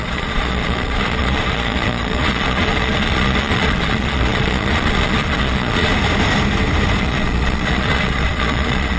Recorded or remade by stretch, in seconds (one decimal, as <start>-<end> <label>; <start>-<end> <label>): 0.0-5.9 remade; 5.9-7.0 recorded; 7.0-9.0 remade